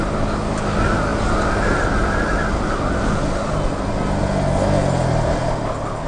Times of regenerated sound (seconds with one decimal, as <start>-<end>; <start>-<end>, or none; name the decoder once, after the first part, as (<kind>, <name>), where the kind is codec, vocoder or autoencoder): none